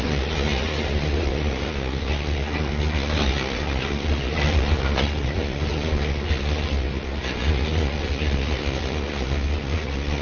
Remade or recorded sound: remade